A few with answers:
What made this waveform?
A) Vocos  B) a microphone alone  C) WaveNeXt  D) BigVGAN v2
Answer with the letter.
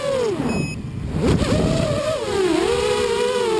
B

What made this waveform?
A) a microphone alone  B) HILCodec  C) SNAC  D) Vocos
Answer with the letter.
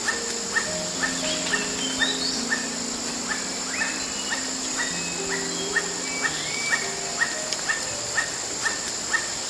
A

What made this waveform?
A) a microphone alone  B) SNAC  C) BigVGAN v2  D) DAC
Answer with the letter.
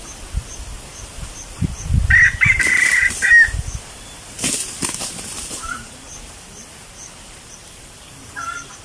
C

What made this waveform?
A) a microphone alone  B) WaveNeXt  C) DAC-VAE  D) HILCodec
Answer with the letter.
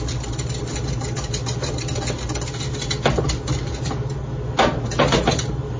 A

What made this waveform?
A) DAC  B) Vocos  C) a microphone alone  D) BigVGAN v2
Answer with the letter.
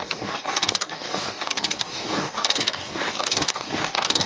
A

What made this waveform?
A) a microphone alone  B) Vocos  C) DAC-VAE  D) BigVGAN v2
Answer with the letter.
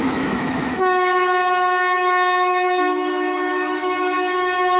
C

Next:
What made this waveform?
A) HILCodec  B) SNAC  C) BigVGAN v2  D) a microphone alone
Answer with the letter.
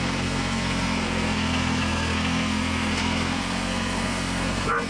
B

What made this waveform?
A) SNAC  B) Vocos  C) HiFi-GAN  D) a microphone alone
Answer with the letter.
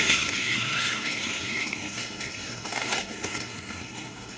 A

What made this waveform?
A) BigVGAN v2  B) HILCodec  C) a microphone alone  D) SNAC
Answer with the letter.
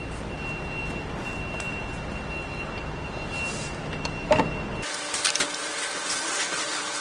C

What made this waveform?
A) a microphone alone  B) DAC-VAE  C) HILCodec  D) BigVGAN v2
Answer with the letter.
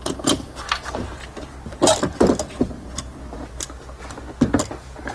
A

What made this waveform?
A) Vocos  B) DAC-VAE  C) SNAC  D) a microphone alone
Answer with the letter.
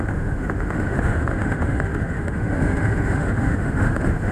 B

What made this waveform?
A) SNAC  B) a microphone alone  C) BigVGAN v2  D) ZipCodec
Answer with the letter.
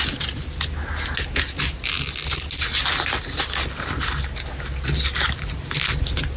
B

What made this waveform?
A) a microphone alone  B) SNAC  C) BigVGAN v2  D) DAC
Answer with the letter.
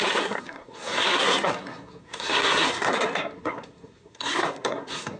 B